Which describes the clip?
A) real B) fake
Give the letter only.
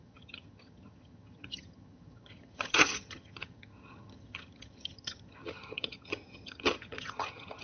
B